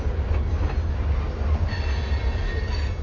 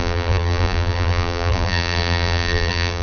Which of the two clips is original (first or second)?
first